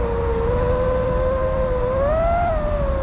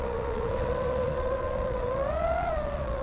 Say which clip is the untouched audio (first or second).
first